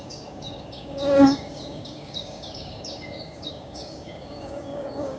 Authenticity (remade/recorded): remade